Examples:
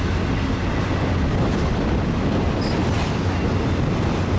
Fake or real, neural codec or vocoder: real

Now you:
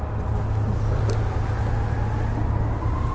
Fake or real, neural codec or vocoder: real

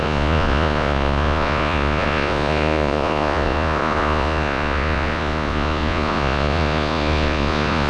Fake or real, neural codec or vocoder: fake, vocoder, Vocos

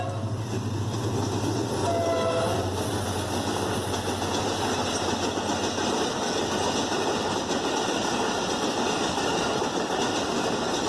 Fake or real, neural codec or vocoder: real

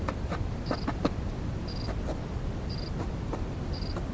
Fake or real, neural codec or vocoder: real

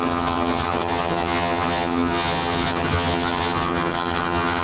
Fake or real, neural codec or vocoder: fake, vocoder, HiFi-GAN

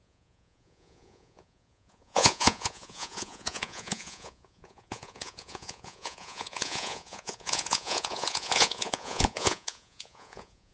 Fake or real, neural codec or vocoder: fake, vocoder, Vocos